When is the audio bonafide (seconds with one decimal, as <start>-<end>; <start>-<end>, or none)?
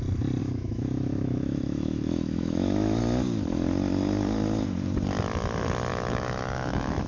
0.0-0.4; 3.0-5.9